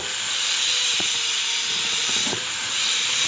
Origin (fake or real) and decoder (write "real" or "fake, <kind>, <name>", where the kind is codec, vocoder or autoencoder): fake, vocoder, BigVGAN v2